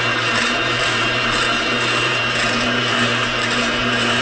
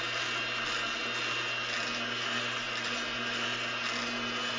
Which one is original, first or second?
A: second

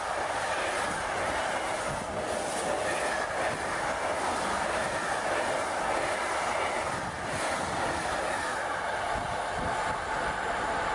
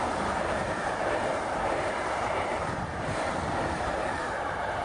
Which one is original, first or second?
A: first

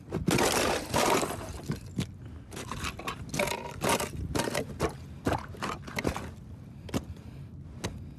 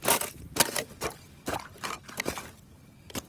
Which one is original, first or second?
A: first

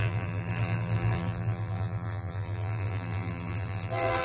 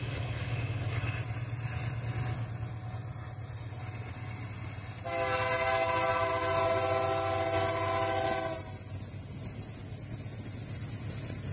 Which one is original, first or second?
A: second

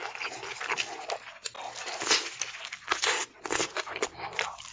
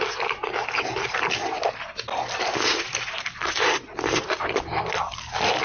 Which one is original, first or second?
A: first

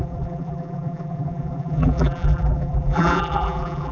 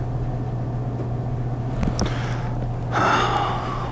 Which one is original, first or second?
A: second